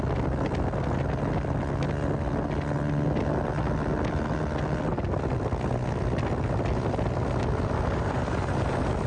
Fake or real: real